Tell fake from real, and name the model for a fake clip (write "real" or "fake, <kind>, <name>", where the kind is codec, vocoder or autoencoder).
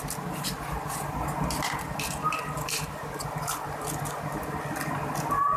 real